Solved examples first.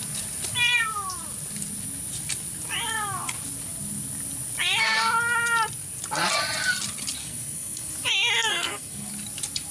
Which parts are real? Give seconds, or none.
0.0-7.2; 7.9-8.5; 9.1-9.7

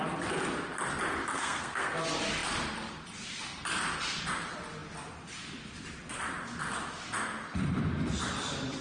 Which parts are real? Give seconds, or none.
0.0-1.3; 2.0-8.8

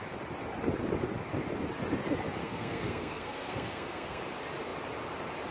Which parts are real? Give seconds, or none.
0.0-2.4; 4.2-5.5

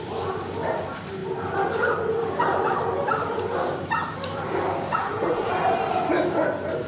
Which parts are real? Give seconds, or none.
0.0-5.0; 5.5-6.9

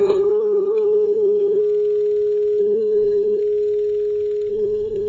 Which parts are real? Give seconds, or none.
1.6-2.6; 3.4-4.5

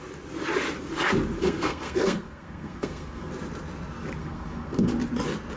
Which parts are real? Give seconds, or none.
0.0-1.4; 3.3-4.2; 4.9-5.6